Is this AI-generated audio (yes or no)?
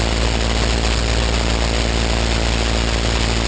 no